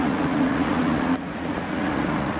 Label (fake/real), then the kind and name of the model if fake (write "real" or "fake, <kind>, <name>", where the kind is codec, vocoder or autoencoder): fake, vocoder, Vocos